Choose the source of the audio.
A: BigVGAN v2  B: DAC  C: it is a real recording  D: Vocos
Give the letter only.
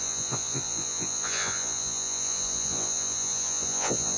D